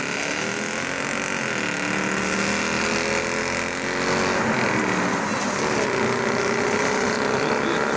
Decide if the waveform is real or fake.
real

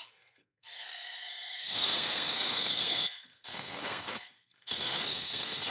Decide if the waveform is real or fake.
fake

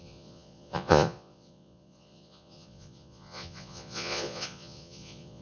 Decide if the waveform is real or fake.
fake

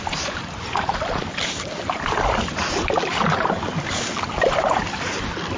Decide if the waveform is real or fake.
real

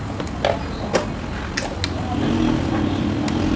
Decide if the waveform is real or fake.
real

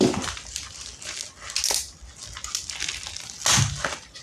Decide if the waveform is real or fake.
real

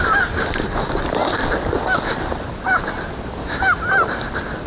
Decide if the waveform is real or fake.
real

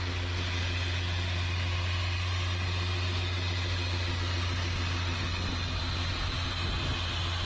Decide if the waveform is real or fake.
real